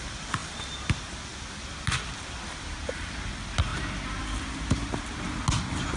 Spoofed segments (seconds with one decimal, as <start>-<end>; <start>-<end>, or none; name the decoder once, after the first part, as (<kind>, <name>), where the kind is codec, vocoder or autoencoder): none